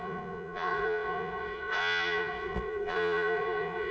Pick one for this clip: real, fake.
fake